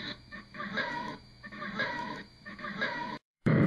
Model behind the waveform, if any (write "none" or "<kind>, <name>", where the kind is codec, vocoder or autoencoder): autoencoder, DAC-VAE